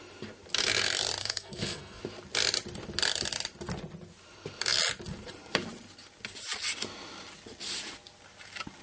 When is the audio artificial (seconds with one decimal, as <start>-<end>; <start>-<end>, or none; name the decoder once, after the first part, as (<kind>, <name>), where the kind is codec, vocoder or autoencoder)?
1.2-2.0 (codec, SNAC)